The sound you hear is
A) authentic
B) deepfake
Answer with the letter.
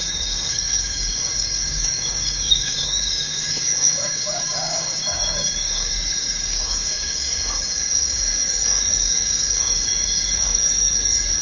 B